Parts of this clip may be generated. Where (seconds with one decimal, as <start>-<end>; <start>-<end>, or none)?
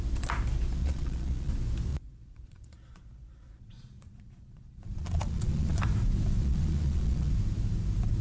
0.8-1.5; 1.9-5.8; 6.4-7.3